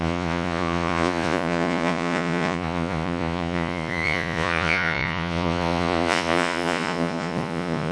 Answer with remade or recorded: remade